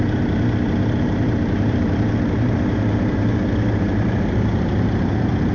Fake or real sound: fake